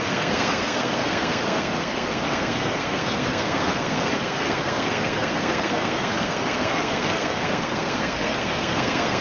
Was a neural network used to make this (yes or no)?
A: yes